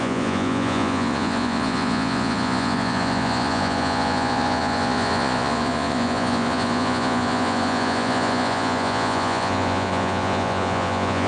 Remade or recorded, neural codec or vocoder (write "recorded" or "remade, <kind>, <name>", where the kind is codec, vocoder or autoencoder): remade, vocoder, Vocos